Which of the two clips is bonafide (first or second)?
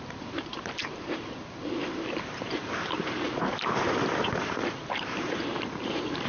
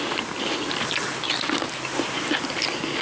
second